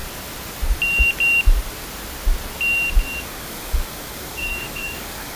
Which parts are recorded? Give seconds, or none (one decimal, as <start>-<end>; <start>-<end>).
0.0-3.2

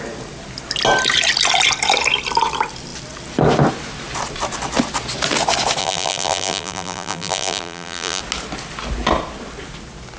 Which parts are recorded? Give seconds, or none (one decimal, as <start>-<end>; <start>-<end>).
0.0-5.8; 8.2-10.2

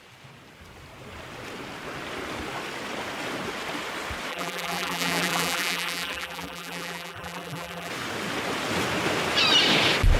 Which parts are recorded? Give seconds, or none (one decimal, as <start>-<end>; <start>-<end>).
0.0-4.3; 7.9-10.2

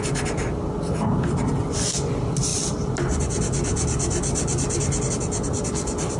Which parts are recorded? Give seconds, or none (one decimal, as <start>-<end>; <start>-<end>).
0.0-6.2

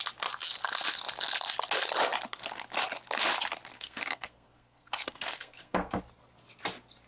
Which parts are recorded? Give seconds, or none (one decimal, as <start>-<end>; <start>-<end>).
0.0-3.7; 6.0-7.1

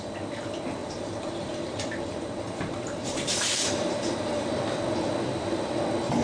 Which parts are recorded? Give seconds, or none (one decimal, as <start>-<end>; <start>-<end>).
0.0-0.8; 4.5-6.2

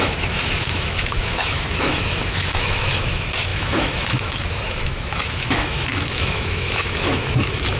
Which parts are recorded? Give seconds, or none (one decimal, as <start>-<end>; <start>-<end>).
none